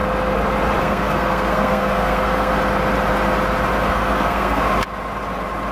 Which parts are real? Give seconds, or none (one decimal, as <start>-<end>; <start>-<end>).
0.0-0.8; 2.5-3.9; 4.6-5.7